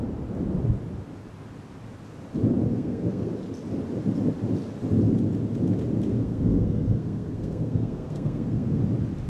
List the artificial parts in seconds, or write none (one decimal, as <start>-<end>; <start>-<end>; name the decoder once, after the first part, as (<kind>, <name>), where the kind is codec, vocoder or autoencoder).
2.7-3.3 (codec, SNAC); 6.1-8.8